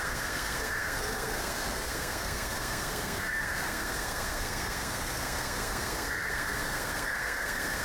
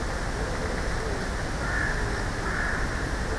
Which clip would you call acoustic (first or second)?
second